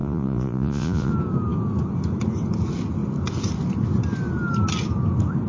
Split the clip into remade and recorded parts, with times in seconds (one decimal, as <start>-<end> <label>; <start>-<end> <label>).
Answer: 0.0-1.1 remade; 1.1-5.5 recorded